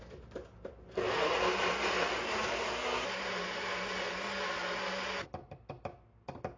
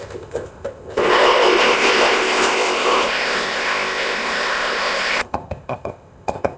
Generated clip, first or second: second